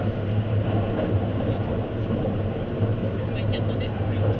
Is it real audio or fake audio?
real